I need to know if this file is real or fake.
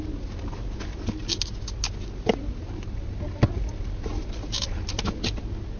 real